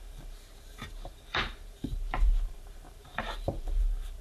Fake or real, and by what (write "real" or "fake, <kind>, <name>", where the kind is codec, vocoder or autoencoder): fake, vocoder, BigVGAN v2